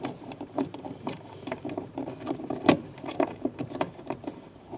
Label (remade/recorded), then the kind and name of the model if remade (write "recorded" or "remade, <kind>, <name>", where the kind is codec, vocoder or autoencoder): remade, vocoder, BigVGAN v2